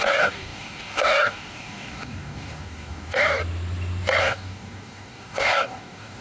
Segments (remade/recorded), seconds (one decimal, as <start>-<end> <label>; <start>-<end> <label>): 0.0-3.4 remade; 3.4-4.2 recorded; 4.2-6.2 remade

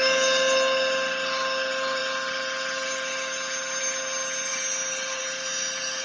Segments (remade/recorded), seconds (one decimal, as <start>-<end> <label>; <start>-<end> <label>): 0.0-6.0 recorded